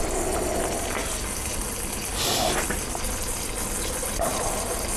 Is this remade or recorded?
recorded